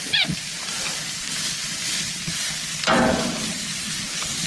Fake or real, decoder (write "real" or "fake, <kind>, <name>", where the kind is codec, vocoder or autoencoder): real